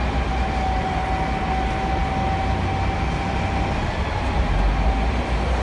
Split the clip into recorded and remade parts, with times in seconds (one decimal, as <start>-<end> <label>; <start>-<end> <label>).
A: 0.0-5.6 recorded